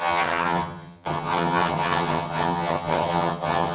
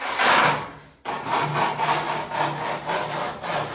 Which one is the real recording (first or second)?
second